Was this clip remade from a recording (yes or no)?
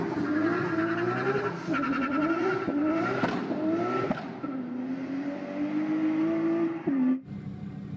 no